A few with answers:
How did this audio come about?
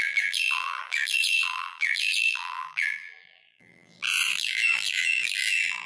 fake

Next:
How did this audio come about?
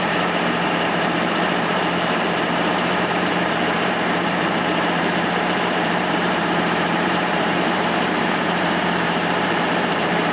fake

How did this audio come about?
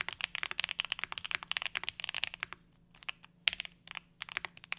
real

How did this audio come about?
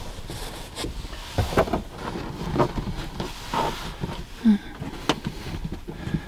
real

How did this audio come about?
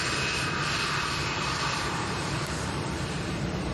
fake